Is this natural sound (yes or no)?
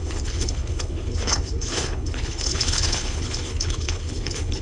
no